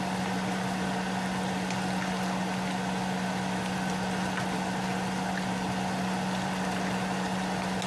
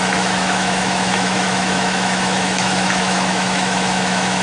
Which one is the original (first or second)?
first